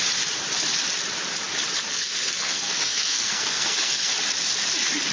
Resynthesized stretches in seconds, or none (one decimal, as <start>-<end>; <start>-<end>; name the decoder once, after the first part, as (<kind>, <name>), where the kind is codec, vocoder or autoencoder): 1.9-4.1 (codec, SNAC)